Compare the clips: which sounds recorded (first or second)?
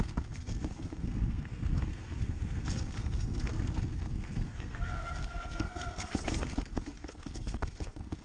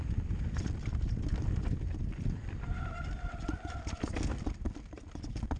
second